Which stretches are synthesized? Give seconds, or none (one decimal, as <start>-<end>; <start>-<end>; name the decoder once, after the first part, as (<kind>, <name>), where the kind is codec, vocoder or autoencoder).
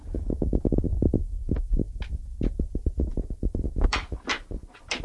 3.1-5.0 (vocoder, BigVGAN v2)